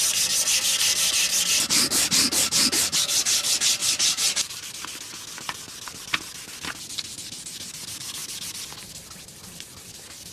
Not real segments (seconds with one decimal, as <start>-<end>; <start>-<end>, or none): 3.8-4.7